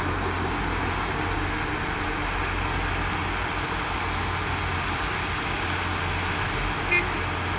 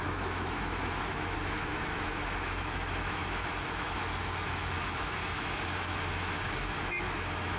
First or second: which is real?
first